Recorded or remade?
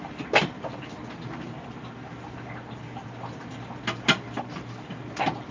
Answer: recorded